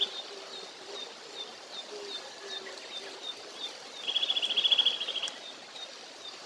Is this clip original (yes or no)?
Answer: yes